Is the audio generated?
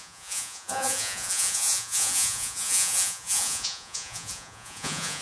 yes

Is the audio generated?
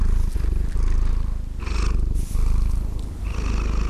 no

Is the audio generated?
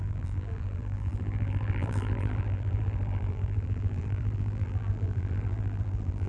yes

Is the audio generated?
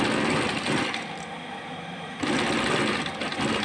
yes